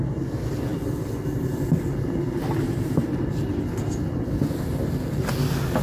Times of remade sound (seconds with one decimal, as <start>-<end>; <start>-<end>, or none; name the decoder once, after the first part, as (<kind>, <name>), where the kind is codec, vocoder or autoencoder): none

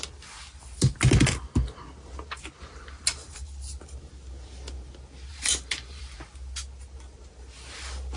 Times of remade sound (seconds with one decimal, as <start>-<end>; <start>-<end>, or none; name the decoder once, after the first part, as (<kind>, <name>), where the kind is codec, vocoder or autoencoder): 3.2-3.8 (vocoder, BigVGAN v2); 5.3-6.0

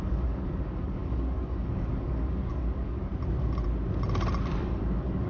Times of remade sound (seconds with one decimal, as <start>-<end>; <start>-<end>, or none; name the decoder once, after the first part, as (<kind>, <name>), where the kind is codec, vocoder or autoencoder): 0.0-3.1 (codec, DAC); 4.6-5.3

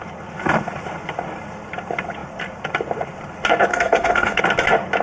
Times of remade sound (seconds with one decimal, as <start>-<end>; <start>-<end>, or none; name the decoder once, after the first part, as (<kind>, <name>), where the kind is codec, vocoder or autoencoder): 3.7-4.4 (codec, SNAC)

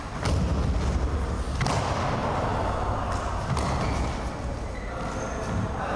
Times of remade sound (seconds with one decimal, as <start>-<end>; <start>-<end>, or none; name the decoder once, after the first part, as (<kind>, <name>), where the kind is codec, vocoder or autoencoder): none

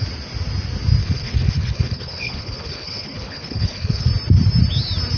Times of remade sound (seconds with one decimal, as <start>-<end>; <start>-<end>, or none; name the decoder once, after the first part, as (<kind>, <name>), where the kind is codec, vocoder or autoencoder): 1.0-4.1 (codec, HILCodec)

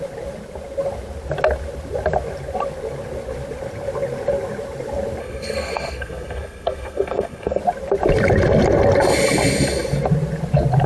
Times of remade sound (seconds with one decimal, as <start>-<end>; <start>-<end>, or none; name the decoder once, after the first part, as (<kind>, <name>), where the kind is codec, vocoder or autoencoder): 5.2-7.6 (codec, SNAC)

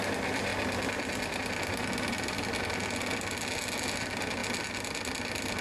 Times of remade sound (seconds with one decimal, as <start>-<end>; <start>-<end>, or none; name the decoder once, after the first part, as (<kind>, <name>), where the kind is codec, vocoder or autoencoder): 0.0-0.5 (vocoder, BigVGAN v2); 3.9-4.4